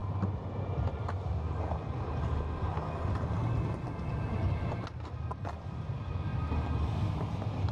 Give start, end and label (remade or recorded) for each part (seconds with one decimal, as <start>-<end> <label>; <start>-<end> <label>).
0.0-7.7 recorded